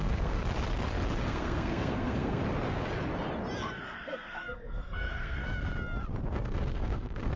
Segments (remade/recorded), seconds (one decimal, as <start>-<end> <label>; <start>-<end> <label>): 0.0-0.4 remade; 0.4-1.2 recorded; 1.2-2.4 remade; 2.4-3.8 recorded; 3.8-5.4 remade; 5.4-6.3 recorded; 6.3-7.4 remade